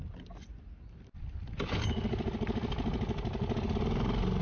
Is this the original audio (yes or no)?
yes